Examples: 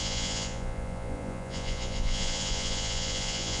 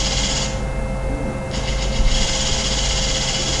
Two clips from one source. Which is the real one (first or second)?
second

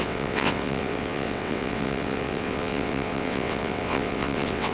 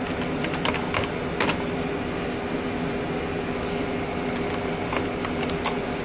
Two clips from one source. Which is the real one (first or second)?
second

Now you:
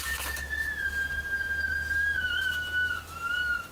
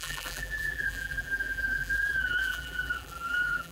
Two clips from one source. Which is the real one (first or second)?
first